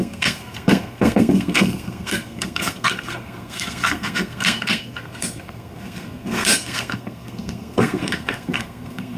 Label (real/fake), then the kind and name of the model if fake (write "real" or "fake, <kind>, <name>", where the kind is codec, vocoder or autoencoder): fake, codec, SNAC